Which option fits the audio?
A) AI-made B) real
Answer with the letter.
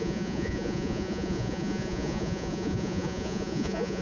A